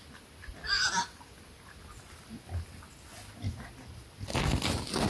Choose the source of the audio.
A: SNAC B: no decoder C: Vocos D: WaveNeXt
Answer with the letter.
B